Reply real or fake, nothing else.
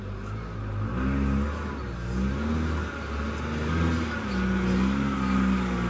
real